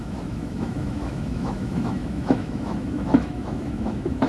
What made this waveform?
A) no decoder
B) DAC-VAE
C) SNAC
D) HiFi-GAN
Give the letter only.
B